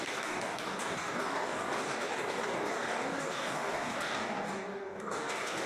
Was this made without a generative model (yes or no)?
no